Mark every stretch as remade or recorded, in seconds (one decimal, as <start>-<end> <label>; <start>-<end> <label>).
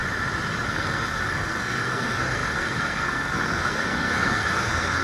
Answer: 0.0-0.7 recorded; 0.7-5.0 remade